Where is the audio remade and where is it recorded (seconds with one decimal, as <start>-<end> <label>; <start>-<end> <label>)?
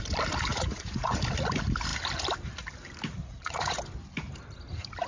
0.0-0.5 recorded; 0.5-1.2 remade; 1.2-3.2 recorded; 3.2-3.8 remade; 3.8-5.1 recorded